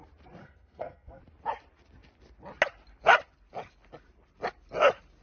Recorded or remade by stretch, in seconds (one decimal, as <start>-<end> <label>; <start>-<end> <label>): 0.0-0.4 recorded; 0.4-1.2 remade; 1.2-5.2 recorded